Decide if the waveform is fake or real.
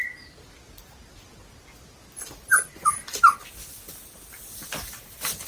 real